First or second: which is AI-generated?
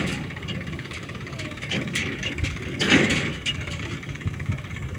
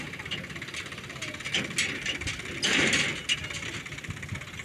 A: first